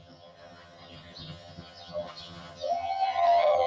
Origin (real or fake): fake